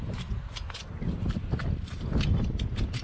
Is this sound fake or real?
real